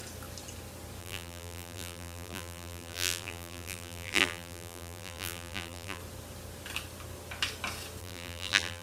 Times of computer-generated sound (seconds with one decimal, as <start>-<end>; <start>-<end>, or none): 1.0-6.0; 8.0-8.8